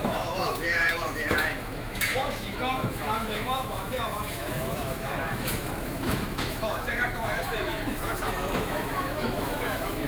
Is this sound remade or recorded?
remade